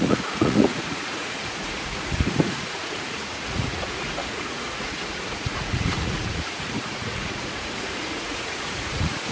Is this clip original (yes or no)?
no